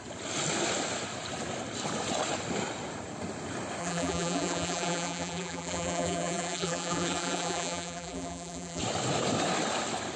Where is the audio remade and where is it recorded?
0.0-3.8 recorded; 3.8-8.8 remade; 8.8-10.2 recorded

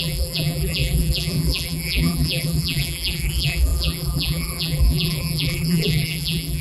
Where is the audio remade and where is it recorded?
0.0-6.6 remade

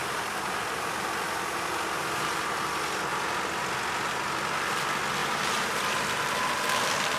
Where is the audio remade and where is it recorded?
0.0-5.2 recorded; 5.2-6.0 remade; 6.0-7.2 recorded

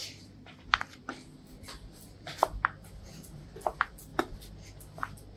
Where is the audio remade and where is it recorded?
0.0-0.5 remade; 0.5-5.4 recorded

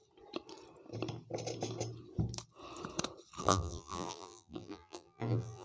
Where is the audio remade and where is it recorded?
0.0-3.4 recorded; 3.4-5.6 remade

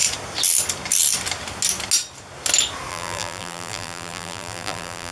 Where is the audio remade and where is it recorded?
0.0-2.9 recorded; 2.9-5.1 remade